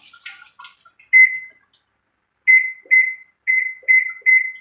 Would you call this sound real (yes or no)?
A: yes